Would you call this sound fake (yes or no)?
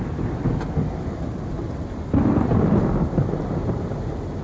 no